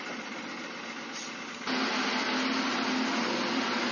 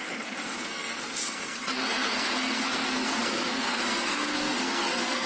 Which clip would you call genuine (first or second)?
first